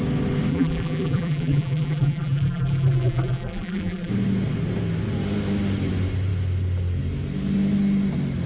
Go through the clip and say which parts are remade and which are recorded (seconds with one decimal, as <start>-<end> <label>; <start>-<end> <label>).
0.0-0.5 recorded; 0.5-4.1 remade; 4.1-8.5 recorded